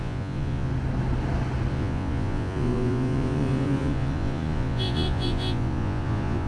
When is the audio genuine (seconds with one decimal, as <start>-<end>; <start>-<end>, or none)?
0.7-1.7